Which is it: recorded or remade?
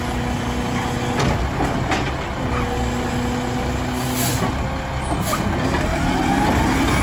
recorded